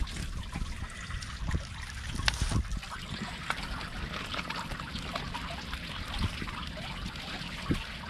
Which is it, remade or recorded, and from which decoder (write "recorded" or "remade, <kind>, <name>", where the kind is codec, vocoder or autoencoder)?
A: recorded